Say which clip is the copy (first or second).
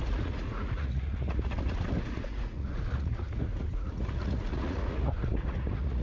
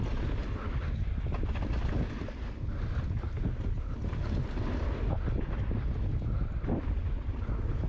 first